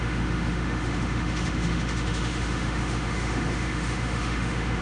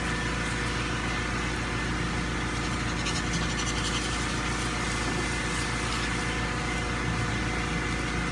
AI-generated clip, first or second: first